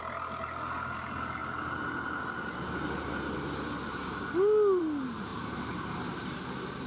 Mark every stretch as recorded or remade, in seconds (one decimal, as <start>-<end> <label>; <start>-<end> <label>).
0.0-5.3 recorded; 5.3-6.4 remade; 6.4-6.9 recorded